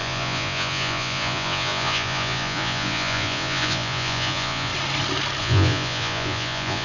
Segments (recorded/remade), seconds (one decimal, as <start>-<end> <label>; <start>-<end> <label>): 0.0-4.7 remade; 4.7-5.4 recorded; 5.4-6.8 remade